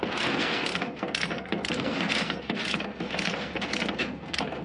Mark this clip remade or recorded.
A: remade